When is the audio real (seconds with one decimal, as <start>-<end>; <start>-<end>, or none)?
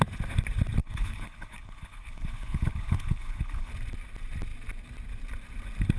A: 0.0-0.8; 3.7-6.0